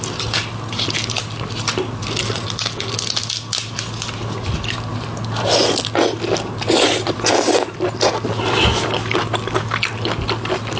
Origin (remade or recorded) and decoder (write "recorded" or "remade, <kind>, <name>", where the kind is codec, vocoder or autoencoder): recorded